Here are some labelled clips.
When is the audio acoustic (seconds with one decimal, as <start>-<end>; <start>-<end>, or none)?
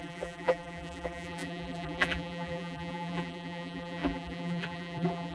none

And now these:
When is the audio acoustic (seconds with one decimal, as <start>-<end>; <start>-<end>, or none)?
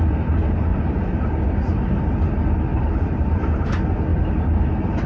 0.0-0.7; 1.4-2.7; 3.4-5.1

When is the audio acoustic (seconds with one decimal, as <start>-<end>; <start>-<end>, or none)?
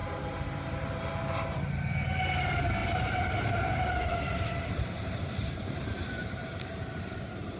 1.7-2.8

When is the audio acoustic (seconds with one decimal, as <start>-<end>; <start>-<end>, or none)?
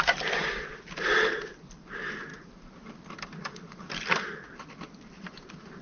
0.0-2.3; 3.1-5.8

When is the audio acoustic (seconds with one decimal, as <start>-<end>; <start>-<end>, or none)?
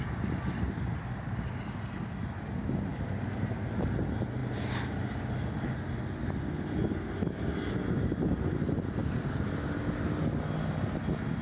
0.0-11.4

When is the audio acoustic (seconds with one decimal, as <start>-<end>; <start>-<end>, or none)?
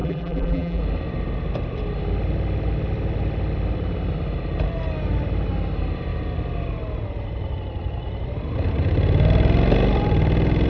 0.8-10.7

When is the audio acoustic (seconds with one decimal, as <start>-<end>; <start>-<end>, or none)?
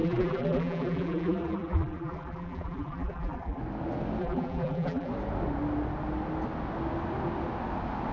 3.6-4.2; 5.1-8.1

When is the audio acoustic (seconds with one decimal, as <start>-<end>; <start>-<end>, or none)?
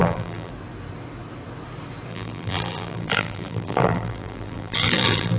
0.5-2.1